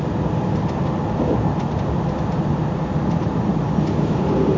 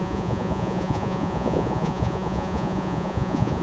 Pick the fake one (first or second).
second